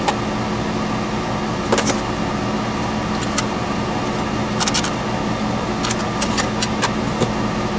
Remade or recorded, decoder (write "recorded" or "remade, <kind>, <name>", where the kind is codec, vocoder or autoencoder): recorded